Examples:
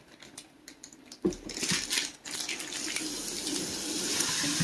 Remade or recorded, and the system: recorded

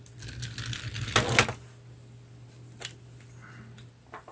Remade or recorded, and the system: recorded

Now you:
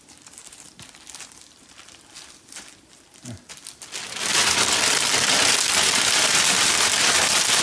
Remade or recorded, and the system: recorded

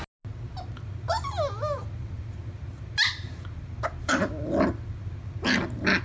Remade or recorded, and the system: recorded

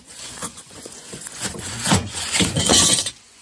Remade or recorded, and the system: remade, vocoder, Vocos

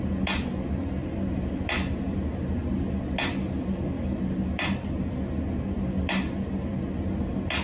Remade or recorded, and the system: recorded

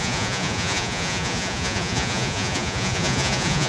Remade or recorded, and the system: remade, vocoder, Vocos